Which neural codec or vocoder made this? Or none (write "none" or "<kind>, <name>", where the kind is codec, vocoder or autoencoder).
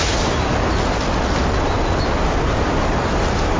none